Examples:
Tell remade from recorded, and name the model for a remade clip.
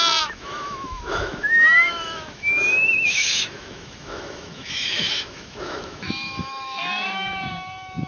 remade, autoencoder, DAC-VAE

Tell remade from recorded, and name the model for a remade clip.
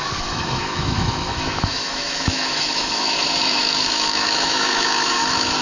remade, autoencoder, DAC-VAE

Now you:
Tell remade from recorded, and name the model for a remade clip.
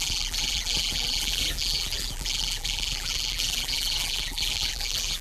remade, vocoder, BigVGAN v2